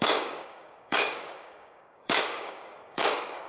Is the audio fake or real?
fake